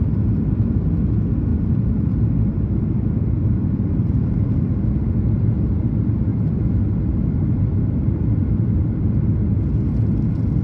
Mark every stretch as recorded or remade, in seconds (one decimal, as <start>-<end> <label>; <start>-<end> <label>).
0.0-1.5 recorded; 1.5-4.8 remade; 4.8-6.3 recorded; 6.3-9.0 remade; 9.0-10.6 recorded

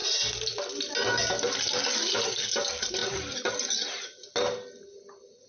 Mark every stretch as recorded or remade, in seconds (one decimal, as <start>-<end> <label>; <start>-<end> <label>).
0.0-3.0 recorded; 3.0-3.5 remade; 3.5-5.5 recorded

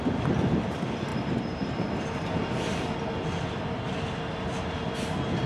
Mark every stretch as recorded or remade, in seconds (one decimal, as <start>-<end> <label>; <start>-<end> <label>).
0.0-1.1 recorded; 1.1-1.9 remade; 1.9-5.5 recorded

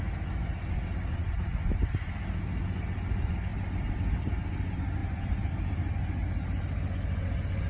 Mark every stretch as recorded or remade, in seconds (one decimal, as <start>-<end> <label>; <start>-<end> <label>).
0.0-1.2 recorded; 1.2-2.0 remade; 2.0-3.5 recorded; 3.5-4.2 remade; 4.2-5.0 recorded; 5.0-5.9 remade; 5.9-7.7 recorded

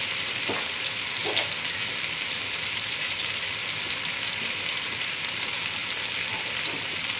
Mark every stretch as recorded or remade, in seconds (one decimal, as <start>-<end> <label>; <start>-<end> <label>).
0.0-1.2 remade; 1.2-2.1 recorded; 2.1-3.6 remade; 3.6-4.8 recorded; 4.8-5.8 remade; 5.8-6.8 recorded; 6.8-7.2 remade